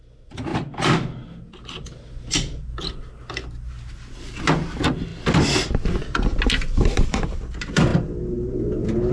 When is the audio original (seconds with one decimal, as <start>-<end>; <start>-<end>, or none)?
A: 0.5-4.2; 5.1-6.5; 7.9-9.1